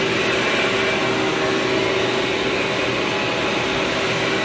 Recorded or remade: recorded